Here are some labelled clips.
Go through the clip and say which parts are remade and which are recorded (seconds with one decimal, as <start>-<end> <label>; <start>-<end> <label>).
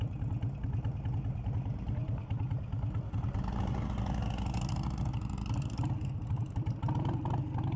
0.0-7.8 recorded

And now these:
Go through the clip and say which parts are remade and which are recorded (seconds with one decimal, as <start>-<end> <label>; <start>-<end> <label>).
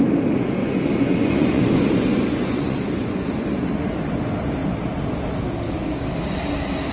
0.0-0.6 recorded; 0.6-3.9 remade; 3.9-6.9 recorded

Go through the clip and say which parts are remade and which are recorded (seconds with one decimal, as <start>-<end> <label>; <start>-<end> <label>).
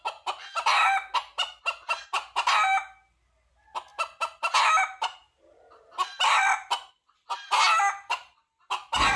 0.0-9.2 recorded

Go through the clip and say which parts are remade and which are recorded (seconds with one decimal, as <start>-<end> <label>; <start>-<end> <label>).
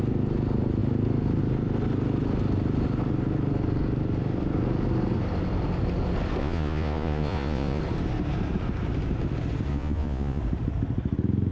0.0-6.4 recorded; 6.4-7.8 remade; 7.8-9.7 recorded; 9.7-10.4 remade; 10.4-11.5 recorded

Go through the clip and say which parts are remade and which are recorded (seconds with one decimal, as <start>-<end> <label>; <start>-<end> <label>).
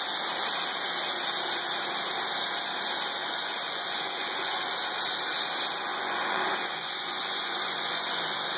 0.0-3.2 recorded; 3.2-4.7 remade; 4.7-5.9 recorded; 5.9-8.6 remade